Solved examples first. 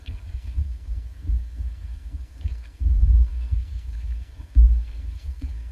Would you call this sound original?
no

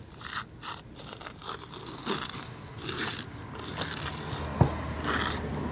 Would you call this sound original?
yes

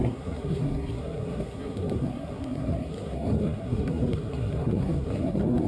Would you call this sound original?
no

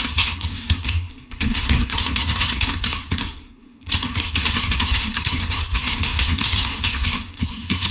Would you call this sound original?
no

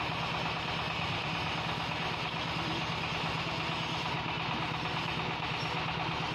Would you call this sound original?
yes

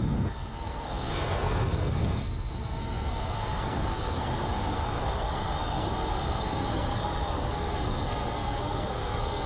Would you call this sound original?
no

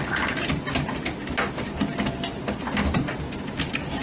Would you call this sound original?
yes